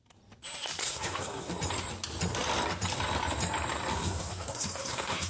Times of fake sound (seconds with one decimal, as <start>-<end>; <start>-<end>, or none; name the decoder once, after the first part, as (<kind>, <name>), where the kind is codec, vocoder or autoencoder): 0.8-1.5 (codec, SNAC); 3.9-5.3